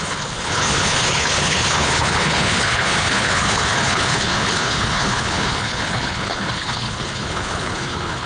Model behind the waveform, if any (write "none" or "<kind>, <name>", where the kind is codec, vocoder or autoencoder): codec, HILCodec